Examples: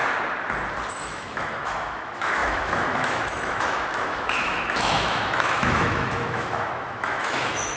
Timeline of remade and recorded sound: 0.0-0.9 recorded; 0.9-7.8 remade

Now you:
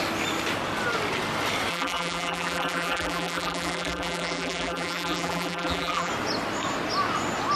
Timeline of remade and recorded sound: 0.0-1.7 recorded; 1.7-6.1 remade; 6.1-7.6 recorded

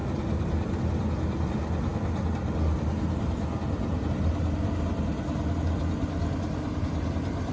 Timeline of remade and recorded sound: 0.0-7.5 recorded